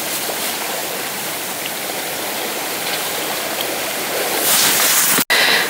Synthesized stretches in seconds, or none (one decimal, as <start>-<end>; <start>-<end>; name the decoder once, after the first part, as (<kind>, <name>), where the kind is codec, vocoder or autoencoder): none